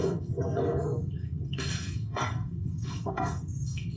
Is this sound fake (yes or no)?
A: yes